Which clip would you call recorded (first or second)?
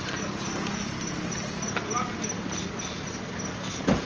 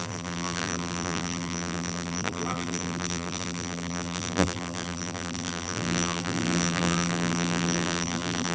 first